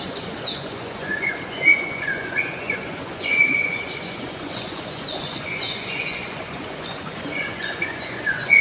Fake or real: fake